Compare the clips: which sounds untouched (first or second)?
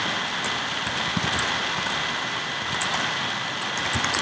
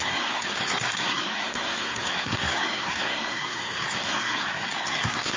first